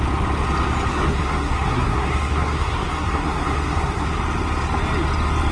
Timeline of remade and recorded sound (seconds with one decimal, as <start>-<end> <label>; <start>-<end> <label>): 0.0-0.9 recorded; 0.9-4.2 remade; 4.2-5.5 recorded